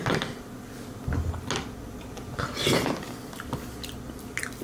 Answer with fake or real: real